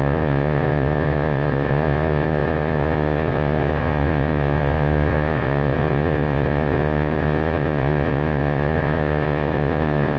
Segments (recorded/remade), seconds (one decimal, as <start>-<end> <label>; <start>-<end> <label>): 0.0-10.2 remade